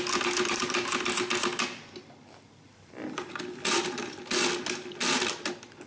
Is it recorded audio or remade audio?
recorded